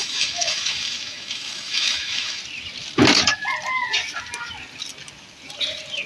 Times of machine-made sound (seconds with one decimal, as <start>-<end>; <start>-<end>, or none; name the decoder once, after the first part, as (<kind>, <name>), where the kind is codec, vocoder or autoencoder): 0.0-2.4 (autoencoder, DAC-VAE)